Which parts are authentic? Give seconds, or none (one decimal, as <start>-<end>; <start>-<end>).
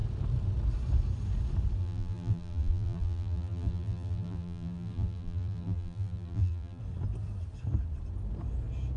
0.0-1.8; 6.8-9.0